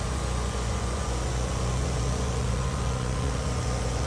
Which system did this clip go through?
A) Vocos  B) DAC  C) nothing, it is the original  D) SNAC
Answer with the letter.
A